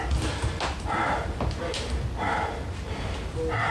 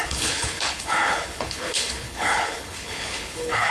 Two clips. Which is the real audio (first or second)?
first